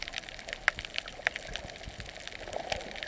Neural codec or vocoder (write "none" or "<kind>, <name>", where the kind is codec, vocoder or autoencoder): none